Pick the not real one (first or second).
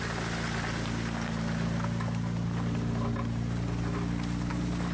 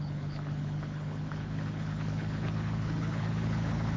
second